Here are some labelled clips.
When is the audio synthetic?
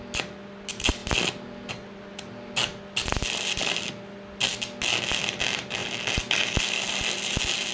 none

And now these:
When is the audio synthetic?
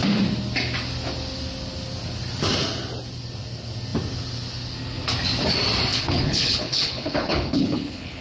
5.9-8.2 (codec, HILCodec)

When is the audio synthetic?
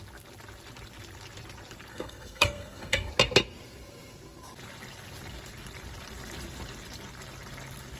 1.9-3.1 (codec, SNAC)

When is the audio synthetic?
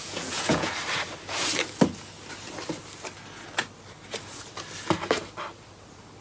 0.0-0.7 (vocoder, Vocos)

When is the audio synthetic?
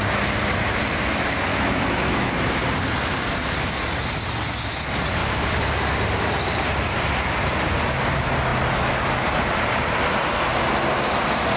1.5-2.3 (autoencoder, DAC-VAE)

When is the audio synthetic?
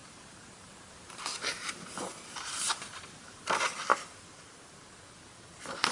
0.0-3.5 (vocoder, BigVGAN v2); 3.9-4.9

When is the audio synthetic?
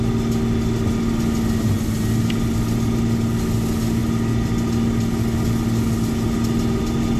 none